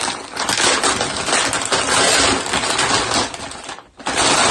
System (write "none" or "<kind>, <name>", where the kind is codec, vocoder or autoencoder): none